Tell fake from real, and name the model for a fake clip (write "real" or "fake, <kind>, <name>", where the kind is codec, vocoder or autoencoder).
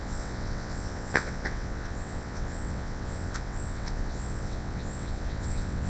fake, vocoder, WaveNeXt